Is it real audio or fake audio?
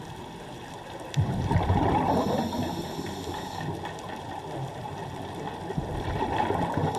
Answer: real